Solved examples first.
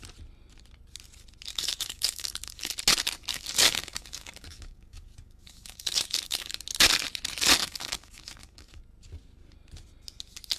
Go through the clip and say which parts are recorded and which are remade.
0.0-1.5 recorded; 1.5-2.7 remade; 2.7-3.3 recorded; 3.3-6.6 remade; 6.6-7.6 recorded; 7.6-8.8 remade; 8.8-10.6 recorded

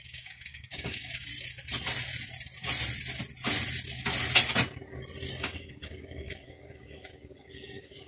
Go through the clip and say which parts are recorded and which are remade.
0.0-1.3 remade; 1.3-5.3 recorded; 5.3-8.1 remade

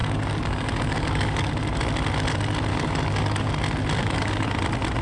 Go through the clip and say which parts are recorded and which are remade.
0.0-1.5 remade; 1.5-2.7 recorded; 2.7-3.5 remade; 3.5-4.0 recorded; 4.0-4.5 remade; 4.5-5.0 recorded

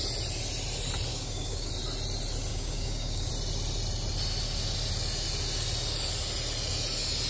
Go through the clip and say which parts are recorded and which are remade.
0.0-1.1 recorded; 1.1-1.7 remade; 1.7-2.5 recorded; 2.5-3.3 remade; 3.3-7.3 recorded